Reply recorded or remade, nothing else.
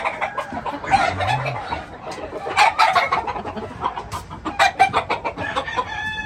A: recorded